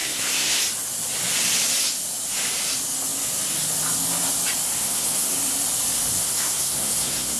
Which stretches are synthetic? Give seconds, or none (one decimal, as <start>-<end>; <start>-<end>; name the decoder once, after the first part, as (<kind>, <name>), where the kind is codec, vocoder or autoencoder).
0.0-0.6 (codec, SNAC); 4.8-5.3; 6.2-7.4